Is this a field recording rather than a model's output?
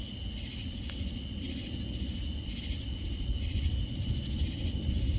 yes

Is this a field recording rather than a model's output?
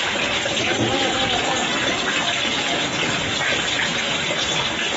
yes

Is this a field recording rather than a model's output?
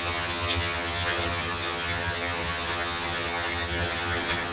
no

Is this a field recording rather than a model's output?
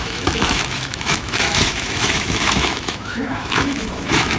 no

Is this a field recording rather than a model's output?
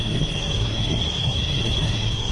no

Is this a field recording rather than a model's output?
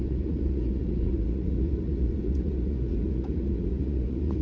no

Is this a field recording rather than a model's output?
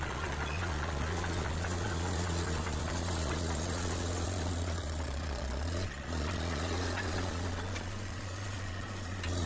no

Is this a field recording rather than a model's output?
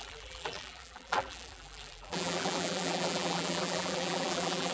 no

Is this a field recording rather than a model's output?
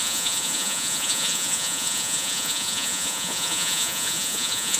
no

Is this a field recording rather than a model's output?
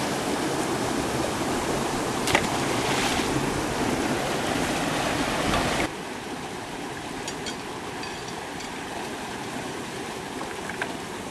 yes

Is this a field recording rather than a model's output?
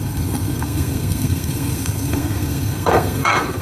no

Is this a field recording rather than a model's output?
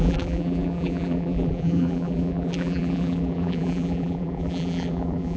no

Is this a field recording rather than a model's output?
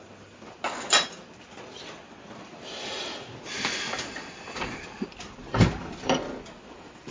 yes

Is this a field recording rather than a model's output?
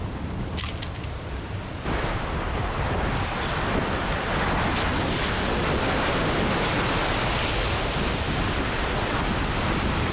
yes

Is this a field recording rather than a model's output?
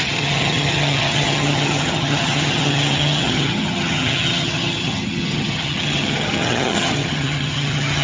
no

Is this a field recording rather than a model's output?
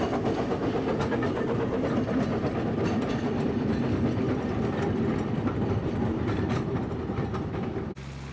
yes